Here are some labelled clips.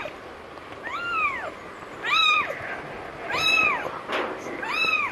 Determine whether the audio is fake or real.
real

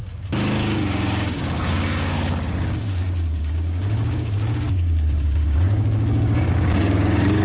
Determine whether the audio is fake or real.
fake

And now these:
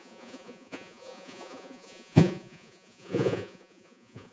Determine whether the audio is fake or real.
fake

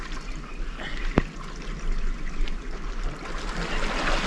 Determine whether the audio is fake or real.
real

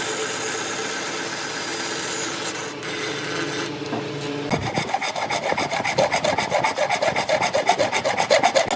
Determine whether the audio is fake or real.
real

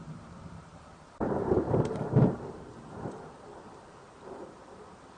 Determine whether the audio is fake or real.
fake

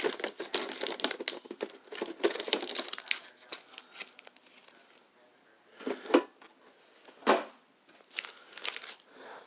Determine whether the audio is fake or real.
real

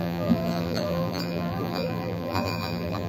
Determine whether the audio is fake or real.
fake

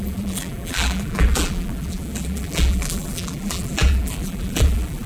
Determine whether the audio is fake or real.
fake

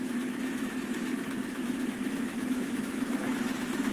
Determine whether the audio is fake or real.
fake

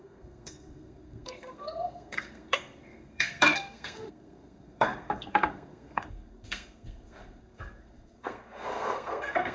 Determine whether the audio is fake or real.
fake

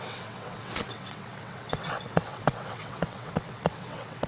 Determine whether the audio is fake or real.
fake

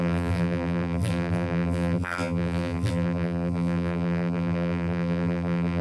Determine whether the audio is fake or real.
fake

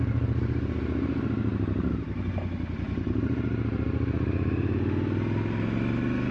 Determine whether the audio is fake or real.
real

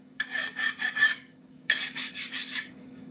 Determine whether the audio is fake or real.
fake